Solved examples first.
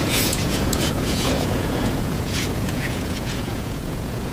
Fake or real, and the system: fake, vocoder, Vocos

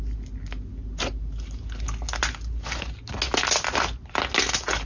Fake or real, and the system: real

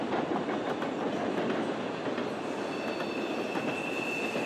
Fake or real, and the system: real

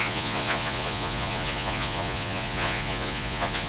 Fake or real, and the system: fake, vocoder, Vocos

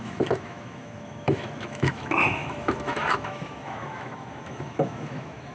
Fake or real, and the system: fake, autoencoder, DAC-VAE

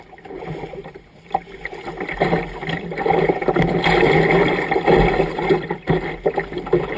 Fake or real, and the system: real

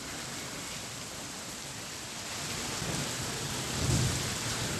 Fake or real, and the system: real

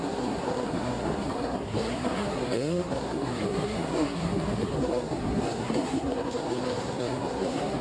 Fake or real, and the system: fake, codec, SNAC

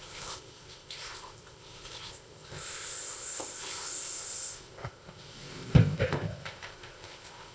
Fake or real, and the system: fake, codec, ZipCodec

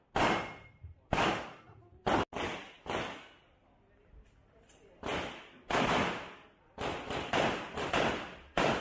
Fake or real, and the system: real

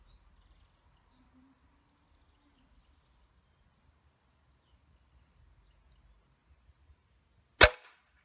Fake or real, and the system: real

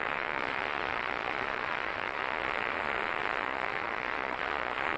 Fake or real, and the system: fake, vocoder, Vocos